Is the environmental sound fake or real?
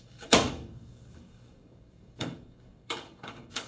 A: fake